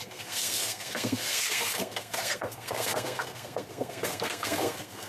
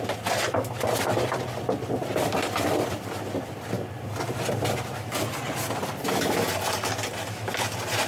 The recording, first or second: second